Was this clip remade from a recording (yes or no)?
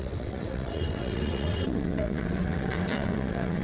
yes